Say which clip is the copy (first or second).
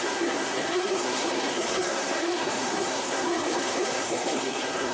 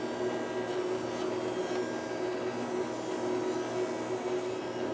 first